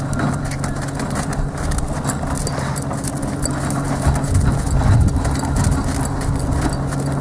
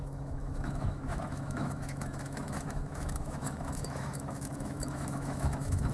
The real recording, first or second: first